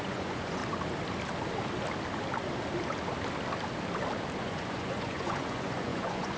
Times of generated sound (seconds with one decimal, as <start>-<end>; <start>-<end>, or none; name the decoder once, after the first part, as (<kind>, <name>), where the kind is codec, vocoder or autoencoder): 0.0-0.6 (vocoder, Vocos); 4.4-6.4